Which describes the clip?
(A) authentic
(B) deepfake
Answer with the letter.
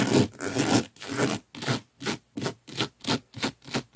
A